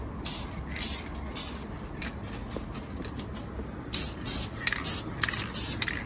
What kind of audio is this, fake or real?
real